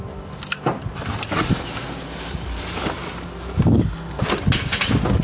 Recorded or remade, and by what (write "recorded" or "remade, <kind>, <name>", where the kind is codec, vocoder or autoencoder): recorded